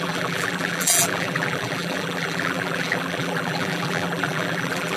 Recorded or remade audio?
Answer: remade